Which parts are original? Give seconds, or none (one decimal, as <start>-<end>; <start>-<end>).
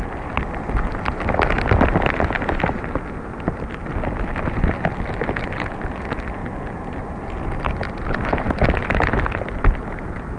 0.0-10.4